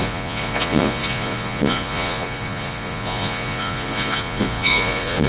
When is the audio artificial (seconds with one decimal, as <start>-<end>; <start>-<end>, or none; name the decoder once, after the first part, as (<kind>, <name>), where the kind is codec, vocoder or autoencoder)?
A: 0.0-5.3 (vocoder, Vocos)

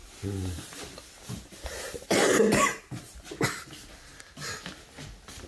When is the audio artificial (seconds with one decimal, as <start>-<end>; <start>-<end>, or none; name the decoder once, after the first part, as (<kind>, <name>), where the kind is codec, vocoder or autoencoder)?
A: 0.0-3.3 (vocoder, BigVGAN v2)